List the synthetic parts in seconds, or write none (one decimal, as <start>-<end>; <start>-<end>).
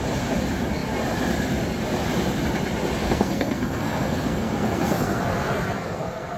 3.0-6.4